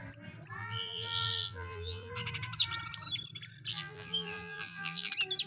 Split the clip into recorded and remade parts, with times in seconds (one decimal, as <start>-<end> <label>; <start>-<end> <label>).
0.0-0.6 recorded; 0.6-2.1 remade; 2.1-3.7 recorded; 3.7-5.1 remade; 5.1-5.5 recorded